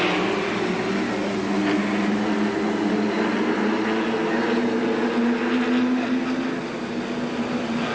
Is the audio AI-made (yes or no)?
no